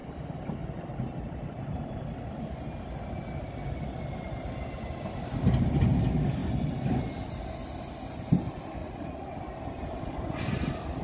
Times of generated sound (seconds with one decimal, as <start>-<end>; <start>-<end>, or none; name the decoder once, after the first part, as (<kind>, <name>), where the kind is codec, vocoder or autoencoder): 8.8-9.4 (vocoder, Vocos)